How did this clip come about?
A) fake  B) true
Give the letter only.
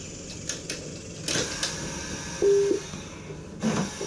B